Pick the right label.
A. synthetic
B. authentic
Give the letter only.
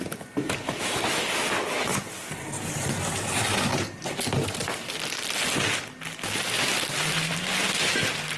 B